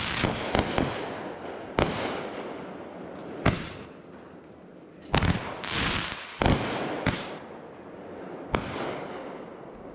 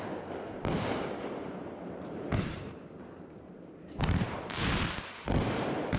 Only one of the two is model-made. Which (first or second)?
second